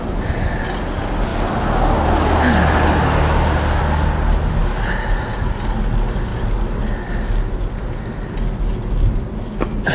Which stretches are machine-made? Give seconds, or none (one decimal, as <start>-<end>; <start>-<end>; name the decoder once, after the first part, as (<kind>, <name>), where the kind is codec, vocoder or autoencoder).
none